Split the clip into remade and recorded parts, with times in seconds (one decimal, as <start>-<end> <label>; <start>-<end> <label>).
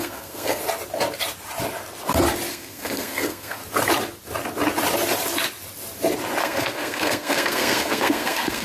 0.0-0.6 remade; 0.6-2.5 recorded; 2.5-3.6 remade; 3.6-6.4 recorded; 6.4-8.6 remade